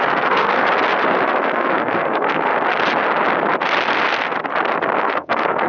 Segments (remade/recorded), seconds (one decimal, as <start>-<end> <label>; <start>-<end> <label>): 0.0-0.7 remade; 0.7-1.4 recorded; 1.4-2.5 remade; 2.5-5.0 recorded; 5.0-5.7 remade